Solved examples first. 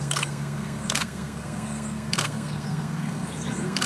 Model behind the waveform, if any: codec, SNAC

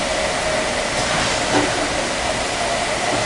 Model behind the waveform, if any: none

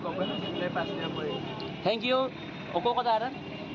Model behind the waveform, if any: none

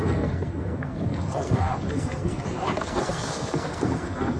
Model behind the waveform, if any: codec, SNAC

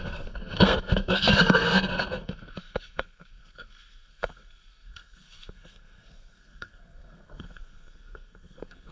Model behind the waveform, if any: codec, SNAC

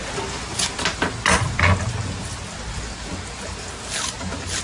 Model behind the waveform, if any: none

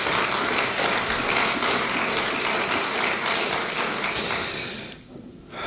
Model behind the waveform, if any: none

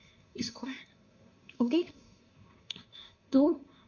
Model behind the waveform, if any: codec, SNAC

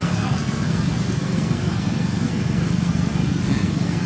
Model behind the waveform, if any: codec, SNAC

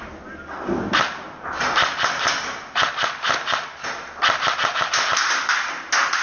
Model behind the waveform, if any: none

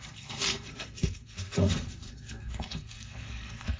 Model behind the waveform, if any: codec, SNAC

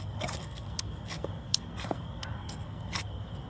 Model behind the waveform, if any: codec, SNAC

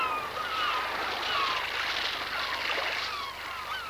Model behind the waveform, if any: none